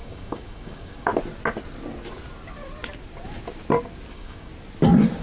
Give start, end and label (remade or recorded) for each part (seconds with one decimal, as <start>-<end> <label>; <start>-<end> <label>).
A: 0.0-1.1 remade; 1.1-4.1 recorded; 4.1-4.5 remade; 4.5-5.2 recorded